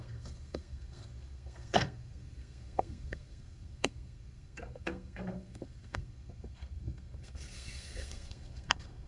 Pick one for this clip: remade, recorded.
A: remade